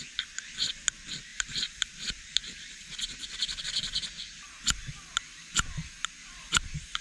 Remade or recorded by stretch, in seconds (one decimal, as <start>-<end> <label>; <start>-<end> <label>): 0.0-1.3 recorded; 1.3-3.6 remade; 3.6-7.0 recorded